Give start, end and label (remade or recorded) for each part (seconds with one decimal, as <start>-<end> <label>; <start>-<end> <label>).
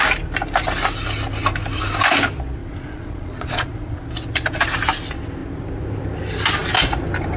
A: 0.0-2.6 recorded; 2.6-4.0 remade; 4.0-7.4 recorded